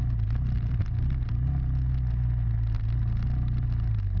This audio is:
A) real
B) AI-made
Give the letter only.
A